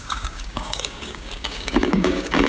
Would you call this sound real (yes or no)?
no